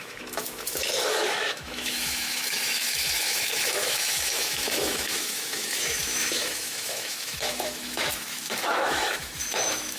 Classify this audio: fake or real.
fake